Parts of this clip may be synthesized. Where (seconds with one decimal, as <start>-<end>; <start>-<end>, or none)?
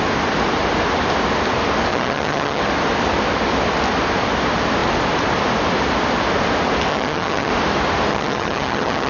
1.9-2.6; 6.9-7.5; 8.1-9.1